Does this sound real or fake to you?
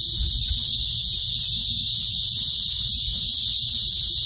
real